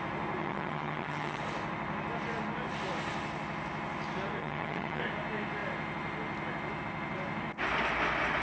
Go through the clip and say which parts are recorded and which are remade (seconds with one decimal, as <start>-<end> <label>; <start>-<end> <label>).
0.0-0.4 recorded; 0.4-1.4 remade; 1.4-4.4 recorded; 4.4-5.0 remade; 5.0-8.4 recorded